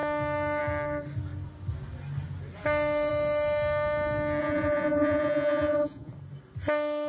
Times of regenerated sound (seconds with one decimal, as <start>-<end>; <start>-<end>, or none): 4.4-6.1